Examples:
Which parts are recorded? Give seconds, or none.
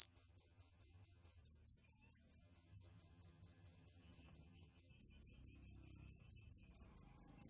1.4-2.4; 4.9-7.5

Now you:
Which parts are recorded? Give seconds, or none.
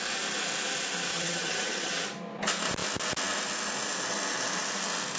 0.0-1.1; 1.9-5.2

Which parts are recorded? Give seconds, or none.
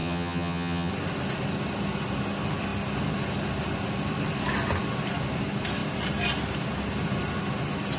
0.9-8.0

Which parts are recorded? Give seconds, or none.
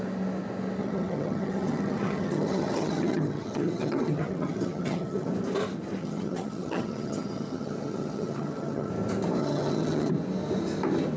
0.0-0.8; 5.3-6.0; 8.9-9.4; 10.1-11.2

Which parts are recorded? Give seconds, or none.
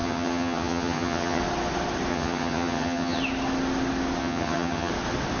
1.4-2.1; 3.2-4.2; 4.9-5.4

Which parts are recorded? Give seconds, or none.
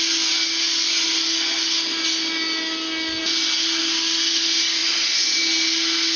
0.0-6.2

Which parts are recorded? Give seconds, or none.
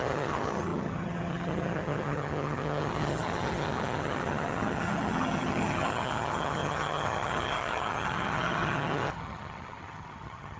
none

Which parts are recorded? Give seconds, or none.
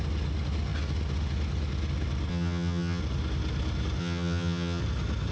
0.0-2.3; 3.0-4.0; 4.8-5.3